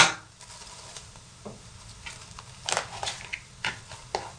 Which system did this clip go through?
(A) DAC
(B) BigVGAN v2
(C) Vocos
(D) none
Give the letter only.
D